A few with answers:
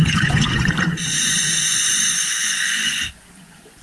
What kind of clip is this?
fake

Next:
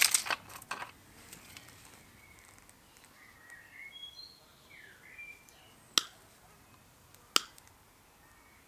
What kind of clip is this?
real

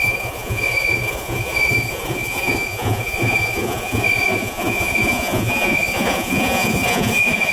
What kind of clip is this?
fake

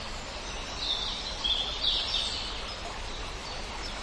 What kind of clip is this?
real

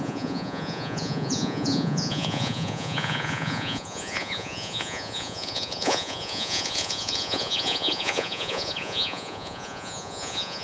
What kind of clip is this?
fake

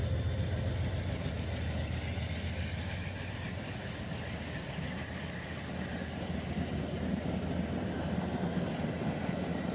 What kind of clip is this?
real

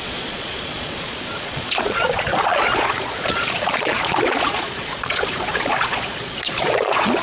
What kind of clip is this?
fake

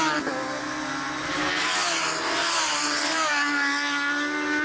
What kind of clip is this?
real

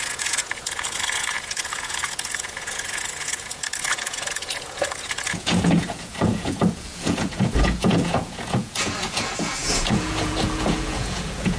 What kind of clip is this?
fake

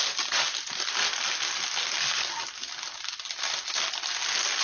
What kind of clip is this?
real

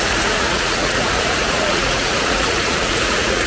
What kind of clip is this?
fake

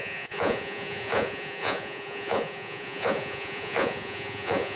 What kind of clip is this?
fake